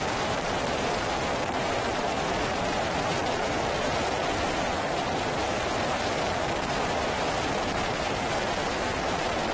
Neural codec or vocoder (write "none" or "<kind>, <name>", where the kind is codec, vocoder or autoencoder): vocoder, BigVGAN v2